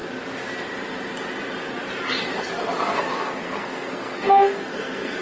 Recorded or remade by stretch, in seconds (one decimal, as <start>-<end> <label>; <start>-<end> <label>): 0.0-2.9 recorded; 2.9-5.2 remade